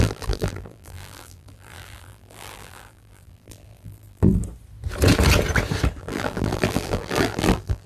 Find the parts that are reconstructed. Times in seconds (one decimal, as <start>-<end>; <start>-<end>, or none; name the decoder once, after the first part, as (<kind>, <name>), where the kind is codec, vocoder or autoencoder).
0.0-4.4 (vocoder, BigVGAN v2); 6.0-7.9